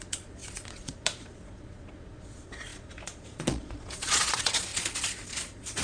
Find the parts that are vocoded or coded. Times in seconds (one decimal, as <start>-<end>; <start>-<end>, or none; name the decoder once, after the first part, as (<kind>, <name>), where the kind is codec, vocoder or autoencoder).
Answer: 0.0-5.8 (vocoder, Vocos)